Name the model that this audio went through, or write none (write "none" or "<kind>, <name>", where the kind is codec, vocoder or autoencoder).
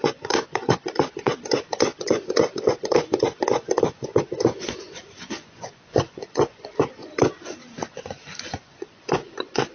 vocoder, Vocos